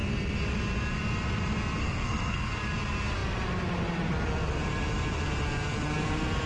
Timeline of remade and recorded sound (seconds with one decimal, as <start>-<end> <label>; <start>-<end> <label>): 0.0-1.8 recorded; 1.8-2.5 remade; 2.5-6.5 recorded